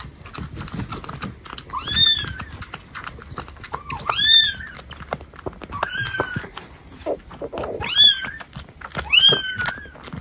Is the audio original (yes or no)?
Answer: yes